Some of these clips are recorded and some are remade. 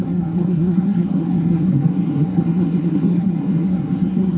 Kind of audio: remade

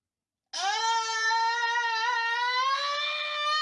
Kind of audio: recorded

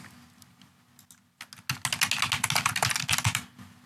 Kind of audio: recorded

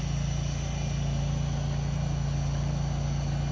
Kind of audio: recorded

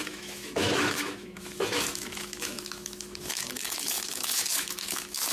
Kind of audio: remade